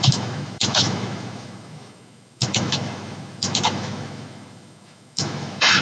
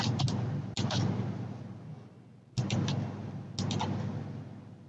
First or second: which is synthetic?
first